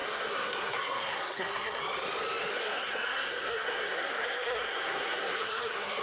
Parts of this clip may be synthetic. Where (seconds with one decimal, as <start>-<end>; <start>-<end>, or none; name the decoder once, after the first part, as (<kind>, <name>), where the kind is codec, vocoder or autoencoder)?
0.0-1.8 (codec, SNAC); 2.5-6.0